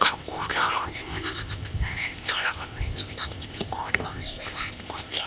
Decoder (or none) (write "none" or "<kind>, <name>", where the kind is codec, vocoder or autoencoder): codec, ZipCodec